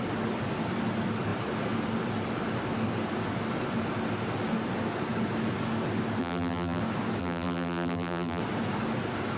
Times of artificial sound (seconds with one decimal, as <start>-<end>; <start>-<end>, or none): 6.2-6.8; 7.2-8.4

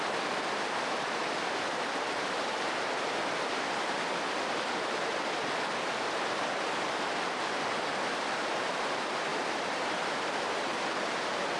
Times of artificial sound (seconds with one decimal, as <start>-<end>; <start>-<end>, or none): 0.0-9.3; 10.9-11.6

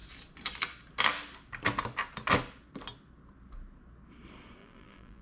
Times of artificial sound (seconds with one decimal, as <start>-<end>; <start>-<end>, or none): 4.6-5.2

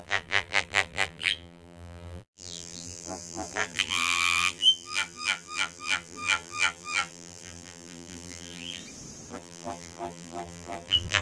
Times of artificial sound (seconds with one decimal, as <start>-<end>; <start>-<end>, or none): 0.0-8.8; 9.3-11.2